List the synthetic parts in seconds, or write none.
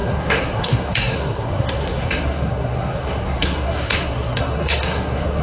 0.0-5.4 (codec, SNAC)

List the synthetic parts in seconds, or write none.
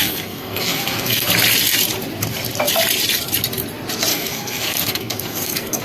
0.0-1.3 (codec, SNAC); 4.1-5.8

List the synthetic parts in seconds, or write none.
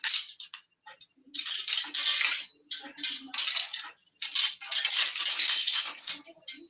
5.3-6.1 (codec, SNAC)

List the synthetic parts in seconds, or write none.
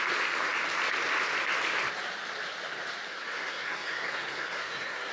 3.1-5.1 (codec, SNAC)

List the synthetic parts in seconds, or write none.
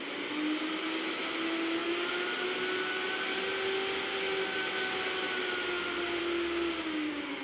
none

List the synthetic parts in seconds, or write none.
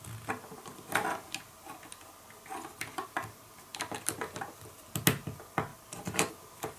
none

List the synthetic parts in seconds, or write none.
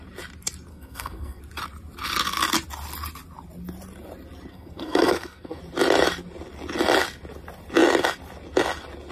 0.7-1.4 (codec, SNAC); 4.5-5.6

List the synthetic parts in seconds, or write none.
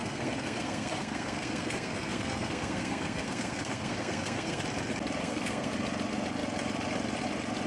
0.0-4.6 (codec, SNAC); 5.2-5.7